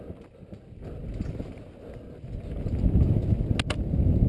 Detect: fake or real real